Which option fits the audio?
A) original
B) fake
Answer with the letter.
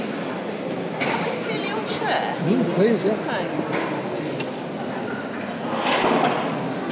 A